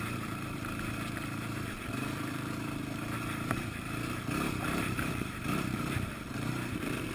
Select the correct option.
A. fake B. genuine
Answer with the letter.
A